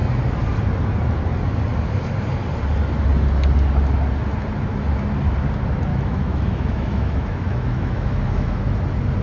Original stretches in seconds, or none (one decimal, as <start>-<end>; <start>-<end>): 0.0-5.9; 8.6-9.2